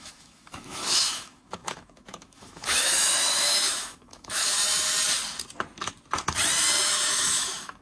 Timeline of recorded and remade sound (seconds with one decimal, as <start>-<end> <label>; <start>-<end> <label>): 0.0-4.6 remade; 4.6-6.8 recorded; 6.8-7.8 remade